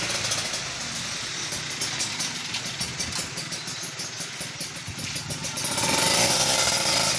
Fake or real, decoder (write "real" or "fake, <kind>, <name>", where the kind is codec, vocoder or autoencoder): real